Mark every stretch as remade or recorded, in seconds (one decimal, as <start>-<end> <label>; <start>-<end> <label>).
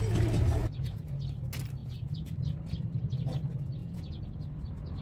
0.0-0.6 recorded; 0.6-1.1 remade; 1.1-1.8 recorded; 1.8-2.3 remade; 2.3-3.8 recorded; 3.8-4.3 remade; 4.3-5.0 recorded